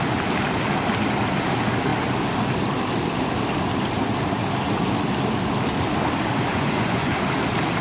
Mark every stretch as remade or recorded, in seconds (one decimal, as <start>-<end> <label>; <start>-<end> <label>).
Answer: 0.0-6.5 recorded; 6.5-7.1 remade; 7.1-7.8 recorded

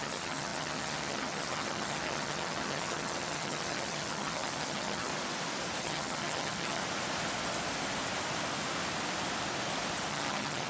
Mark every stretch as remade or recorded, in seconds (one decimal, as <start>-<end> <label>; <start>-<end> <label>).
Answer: 0.0-5.1 remade; 5.1-5.8 recorded; 5.8-6.8 remade; 6.8-10.1 recorded; 10.1-10.7 remade

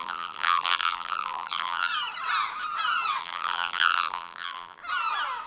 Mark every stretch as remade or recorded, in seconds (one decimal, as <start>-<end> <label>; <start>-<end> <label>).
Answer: 0.0-1.9 remade; 1.9-3.2 recorded; 3.2-4.8 remade; 4.8-5.5 recorded

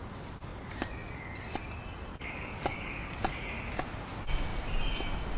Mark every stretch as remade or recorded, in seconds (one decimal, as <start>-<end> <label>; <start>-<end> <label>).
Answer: 0.0-2.1 recorded; 2.1-3.5 remade; 3.5-5.4 recorded

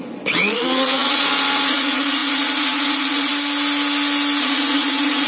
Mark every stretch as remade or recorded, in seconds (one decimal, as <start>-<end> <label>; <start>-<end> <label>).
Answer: 0.0-3.3 remade; 3.3-4.4 recorded; 4.4-5.3 remade

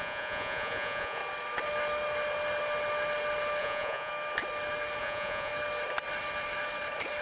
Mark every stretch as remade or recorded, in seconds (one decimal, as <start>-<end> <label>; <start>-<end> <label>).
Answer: 0.0-1.2 remade; 1.2-3.6 recorded; 3.6-4.1 remade; 4.1-5.0 recorded; 5.0-5.5 remade; 5.5-7.2 recorded

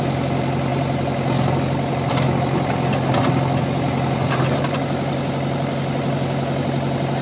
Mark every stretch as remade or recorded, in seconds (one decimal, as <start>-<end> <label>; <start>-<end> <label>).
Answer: 0.0-7.2 recorded

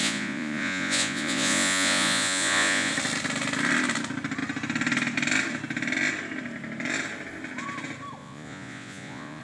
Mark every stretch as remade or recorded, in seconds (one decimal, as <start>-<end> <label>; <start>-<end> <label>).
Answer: 0.0-2.9 remade; 2.9-8.2 recorded; 8.2-9.4 remade